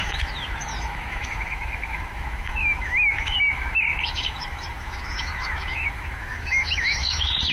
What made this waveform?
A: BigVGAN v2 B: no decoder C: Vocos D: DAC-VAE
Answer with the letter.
D